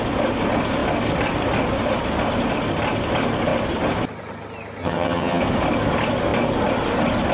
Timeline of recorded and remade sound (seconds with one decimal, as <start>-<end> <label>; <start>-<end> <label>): 0.0-4.8 recorded; 4.8-5.4 remade; 5.4-7.3 recorded